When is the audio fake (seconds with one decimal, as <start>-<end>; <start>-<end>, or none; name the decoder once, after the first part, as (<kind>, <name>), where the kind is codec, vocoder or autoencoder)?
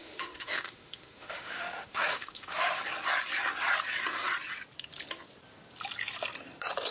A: 0.0-2.8 (autoencoder, DAC-VAE)